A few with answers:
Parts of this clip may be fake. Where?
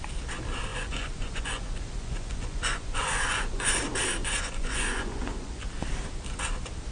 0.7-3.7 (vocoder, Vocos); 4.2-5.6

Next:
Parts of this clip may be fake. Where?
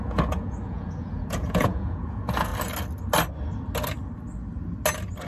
0.0-2.5 (vocoder, Vocos)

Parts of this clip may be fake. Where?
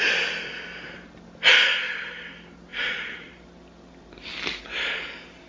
2.7-3.4 (vocoder, Vocos)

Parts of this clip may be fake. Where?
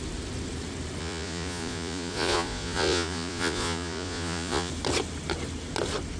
1.0-4.7 (vocoder, Vocos)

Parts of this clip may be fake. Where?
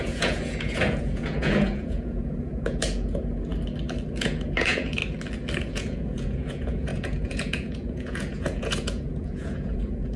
0.0-3.5 (vocoder, Vocos); 4.1-5.0; 5.6-10.2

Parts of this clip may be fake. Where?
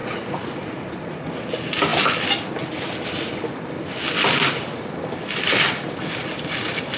0.0-1.3 (vocoder, Vocos)